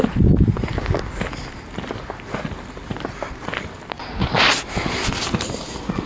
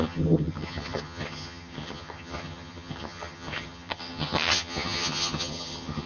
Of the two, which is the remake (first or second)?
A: second